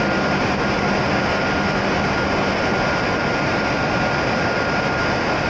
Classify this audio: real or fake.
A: real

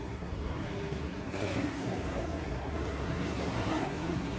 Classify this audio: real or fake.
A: fake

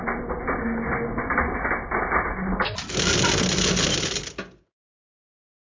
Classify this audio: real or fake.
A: real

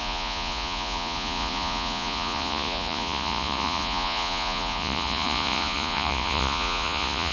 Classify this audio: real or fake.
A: fake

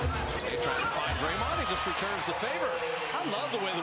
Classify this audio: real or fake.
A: real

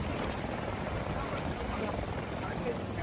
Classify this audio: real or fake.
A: fake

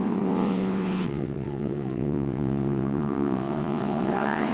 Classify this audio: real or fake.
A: fake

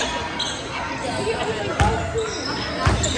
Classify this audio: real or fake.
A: real